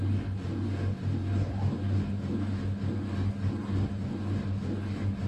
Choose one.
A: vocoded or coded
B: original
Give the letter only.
B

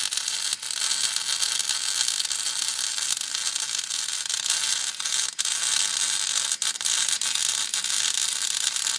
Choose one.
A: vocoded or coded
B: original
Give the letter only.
B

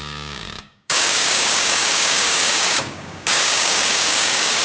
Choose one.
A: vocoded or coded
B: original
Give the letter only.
A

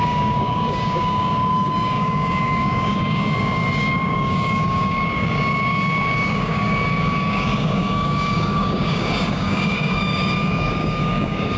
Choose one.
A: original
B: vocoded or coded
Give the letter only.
B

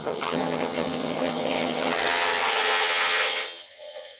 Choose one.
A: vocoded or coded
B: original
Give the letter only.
A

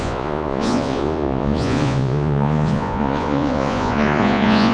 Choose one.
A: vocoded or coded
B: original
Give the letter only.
A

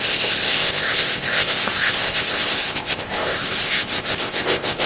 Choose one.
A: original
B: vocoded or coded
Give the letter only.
B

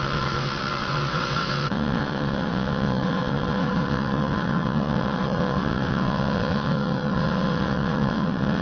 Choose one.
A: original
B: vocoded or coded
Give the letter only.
B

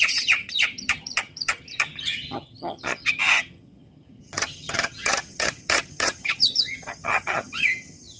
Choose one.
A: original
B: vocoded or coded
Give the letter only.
B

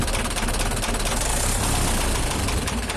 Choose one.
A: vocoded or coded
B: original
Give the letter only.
B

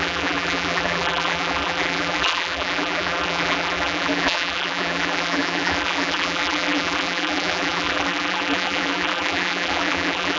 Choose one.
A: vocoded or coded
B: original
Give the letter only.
A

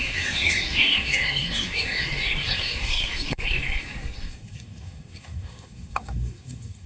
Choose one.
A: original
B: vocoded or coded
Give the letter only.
B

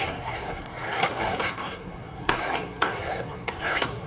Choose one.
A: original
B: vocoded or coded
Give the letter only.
B